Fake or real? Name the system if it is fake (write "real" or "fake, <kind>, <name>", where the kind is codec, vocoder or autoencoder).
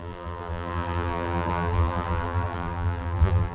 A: fake, vocoder, BigVGAN v2